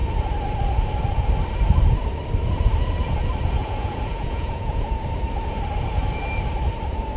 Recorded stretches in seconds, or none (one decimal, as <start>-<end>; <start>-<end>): 0.0-3.6; 4.9-7.2